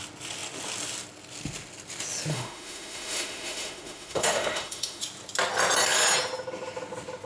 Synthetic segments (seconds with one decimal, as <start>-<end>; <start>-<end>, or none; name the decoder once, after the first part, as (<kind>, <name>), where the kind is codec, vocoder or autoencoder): 2.3-5.0 (autoencoder, DAC-VAE)